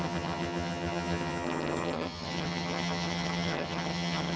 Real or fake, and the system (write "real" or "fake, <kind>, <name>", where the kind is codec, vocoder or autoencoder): fake, vocoder, HiFi-GAN